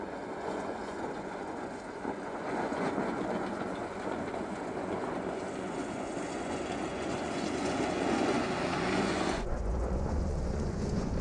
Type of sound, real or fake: fake